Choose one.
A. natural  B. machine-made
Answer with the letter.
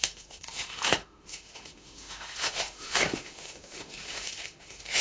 B